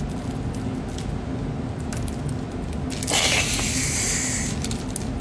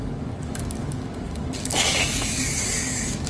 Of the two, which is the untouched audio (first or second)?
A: first